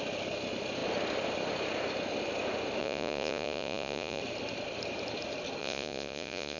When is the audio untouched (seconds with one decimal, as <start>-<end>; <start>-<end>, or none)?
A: 0.0-2.8; 4.2-5.6